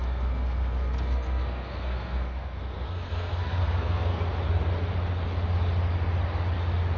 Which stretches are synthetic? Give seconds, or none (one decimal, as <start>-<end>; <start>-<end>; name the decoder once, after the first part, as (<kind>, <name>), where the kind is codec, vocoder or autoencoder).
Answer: 0.0-4.2 (codec, SNAC)